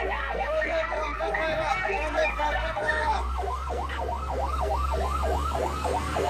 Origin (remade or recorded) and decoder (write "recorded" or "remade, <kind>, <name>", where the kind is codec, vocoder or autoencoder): remade, codec, SNAC